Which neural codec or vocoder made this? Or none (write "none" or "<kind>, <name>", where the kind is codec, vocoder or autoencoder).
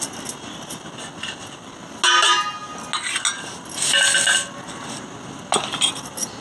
none